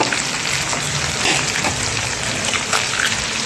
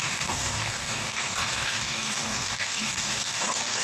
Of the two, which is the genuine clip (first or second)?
first